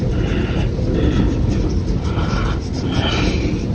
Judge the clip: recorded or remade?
recorded